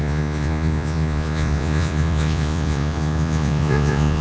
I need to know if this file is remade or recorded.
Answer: remade